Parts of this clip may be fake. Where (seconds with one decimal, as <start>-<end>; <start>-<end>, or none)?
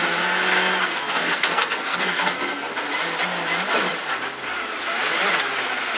0.8-2.7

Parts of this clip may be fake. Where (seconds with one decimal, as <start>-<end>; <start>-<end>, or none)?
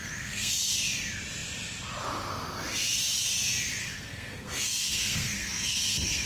0.0-0.5; 3.8-6.3